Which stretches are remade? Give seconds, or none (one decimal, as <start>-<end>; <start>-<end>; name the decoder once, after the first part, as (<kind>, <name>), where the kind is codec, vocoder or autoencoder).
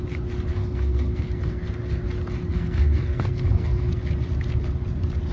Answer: 0.5-1.7 (codec, SNAC); 2.5-4.0